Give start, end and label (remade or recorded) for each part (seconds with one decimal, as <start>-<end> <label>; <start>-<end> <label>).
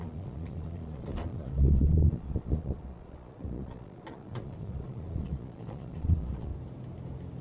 0.0-6.5 remade; 6.5-7.4 recorded